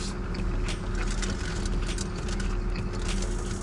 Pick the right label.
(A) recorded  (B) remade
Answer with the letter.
A